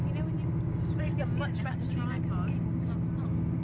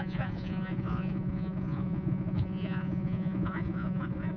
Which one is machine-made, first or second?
second